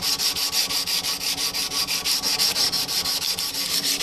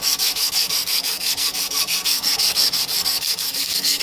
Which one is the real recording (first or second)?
first